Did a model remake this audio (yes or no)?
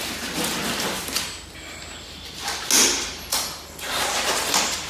no